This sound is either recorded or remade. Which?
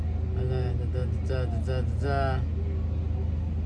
recorded